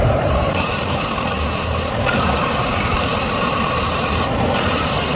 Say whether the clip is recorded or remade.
remade